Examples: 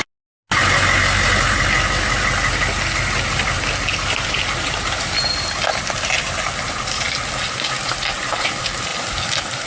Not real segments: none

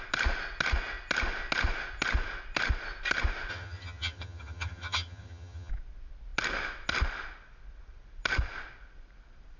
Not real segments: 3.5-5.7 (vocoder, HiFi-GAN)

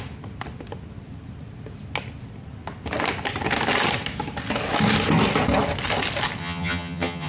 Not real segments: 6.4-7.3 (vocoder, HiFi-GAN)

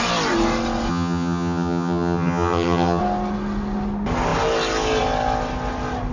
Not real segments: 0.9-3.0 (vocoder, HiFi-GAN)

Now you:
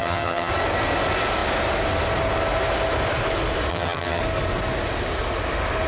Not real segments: 0.0-0.5 (vocoder, HiFi-GAN); 3.7-4.2